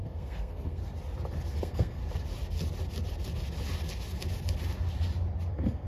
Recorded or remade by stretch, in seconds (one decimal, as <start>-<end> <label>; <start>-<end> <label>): 0.0-0.8 remade; 0.8-1.6 recorded; 1.6-2.0 remade; 2.0-5.5 recorded; 5.5-5.9 remade